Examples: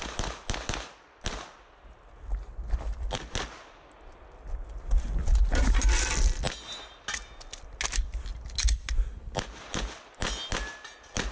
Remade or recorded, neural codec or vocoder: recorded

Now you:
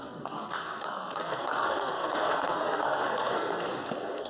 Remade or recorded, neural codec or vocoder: remade, codec, SNAC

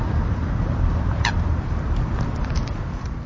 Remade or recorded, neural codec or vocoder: remade, vocoder, BigVGAN v2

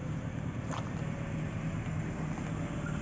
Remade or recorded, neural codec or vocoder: recorded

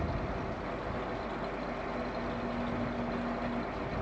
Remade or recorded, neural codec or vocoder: recorded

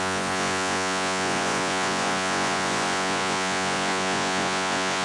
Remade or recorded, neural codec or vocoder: remade, vocoder, Vocos